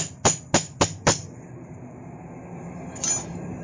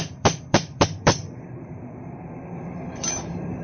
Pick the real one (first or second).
first